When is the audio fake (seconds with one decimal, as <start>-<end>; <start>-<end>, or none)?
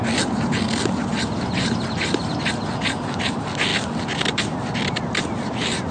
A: none